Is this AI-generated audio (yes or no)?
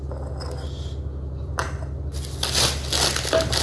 no